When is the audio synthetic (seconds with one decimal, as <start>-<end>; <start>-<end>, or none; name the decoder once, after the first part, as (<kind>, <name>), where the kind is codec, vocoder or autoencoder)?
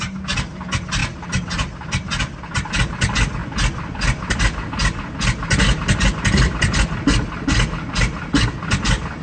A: none